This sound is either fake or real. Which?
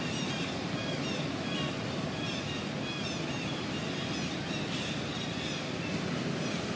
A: real